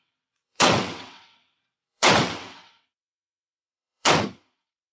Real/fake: fake